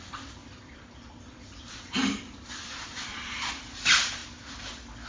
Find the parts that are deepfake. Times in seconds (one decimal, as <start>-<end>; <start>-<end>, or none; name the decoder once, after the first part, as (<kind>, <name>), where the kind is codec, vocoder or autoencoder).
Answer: 0.4-3.5 (vocoder, BigVGAN v2)